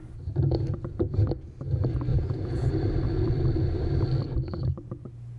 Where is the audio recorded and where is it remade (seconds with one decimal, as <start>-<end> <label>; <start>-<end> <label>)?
0.0-2.1 recorded; 2.1-2.7 remade; 2.7-5.4 recorded